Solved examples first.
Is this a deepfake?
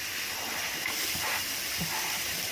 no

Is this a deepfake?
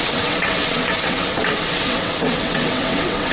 yes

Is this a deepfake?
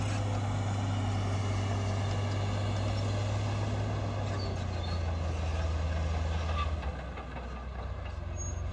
no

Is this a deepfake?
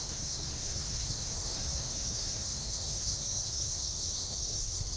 yes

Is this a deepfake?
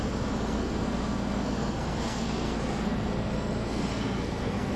yes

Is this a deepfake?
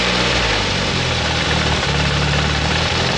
yes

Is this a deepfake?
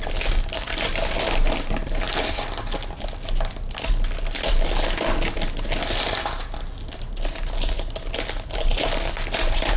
no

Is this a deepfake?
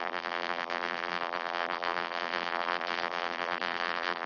yes